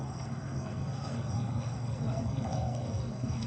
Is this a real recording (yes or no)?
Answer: no